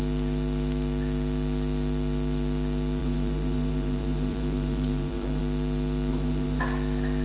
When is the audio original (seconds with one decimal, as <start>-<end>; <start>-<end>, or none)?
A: 0.0-3.0; 5.4-6.1; 6.6-7.2